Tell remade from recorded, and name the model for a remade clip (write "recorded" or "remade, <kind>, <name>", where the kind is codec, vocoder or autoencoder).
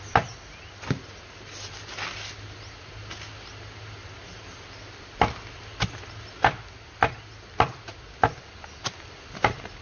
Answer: recorded